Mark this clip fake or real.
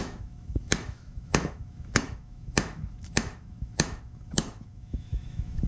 fake